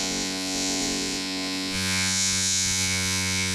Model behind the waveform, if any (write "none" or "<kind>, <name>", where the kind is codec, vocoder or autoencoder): vocoder, Vocos